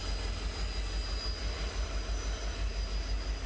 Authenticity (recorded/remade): recorded